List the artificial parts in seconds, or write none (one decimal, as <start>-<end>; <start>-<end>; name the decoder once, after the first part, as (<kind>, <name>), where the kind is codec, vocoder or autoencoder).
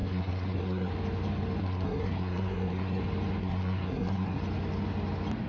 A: 0.0-0.9 (codec, SNAC); 1.6-3.0; 3.4-4.4